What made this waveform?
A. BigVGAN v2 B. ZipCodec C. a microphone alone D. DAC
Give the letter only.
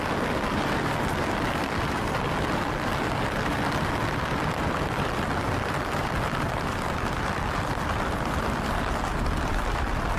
C